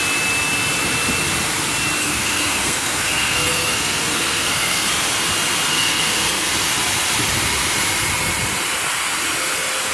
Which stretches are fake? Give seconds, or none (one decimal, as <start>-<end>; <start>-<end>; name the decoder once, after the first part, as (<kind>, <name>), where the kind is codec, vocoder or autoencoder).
2.0-4.9 (codec, SNAC); 5.7-6.5